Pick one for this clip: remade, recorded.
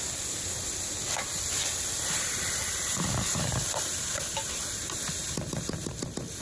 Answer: remade